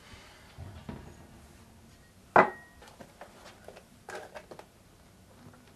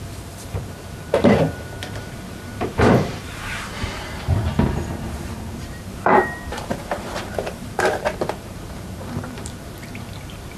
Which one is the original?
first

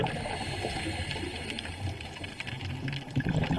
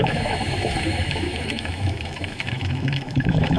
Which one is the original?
first